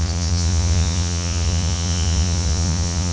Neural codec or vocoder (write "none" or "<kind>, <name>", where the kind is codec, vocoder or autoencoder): vocoder, Vocos